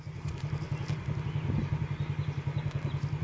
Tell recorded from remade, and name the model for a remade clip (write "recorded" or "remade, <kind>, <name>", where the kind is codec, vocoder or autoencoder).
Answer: recorded